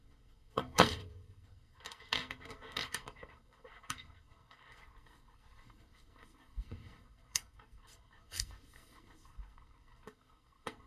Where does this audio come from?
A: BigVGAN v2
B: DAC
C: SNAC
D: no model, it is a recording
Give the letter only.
C